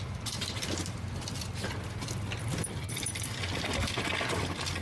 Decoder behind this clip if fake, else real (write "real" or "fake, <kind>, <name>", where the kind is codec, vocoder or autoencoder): fake, vocoder, BigVGAN v2